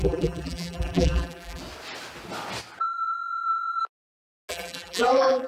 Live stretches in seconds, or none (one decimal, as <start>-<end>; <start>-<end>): 1.6-2.8; 3.8-4.5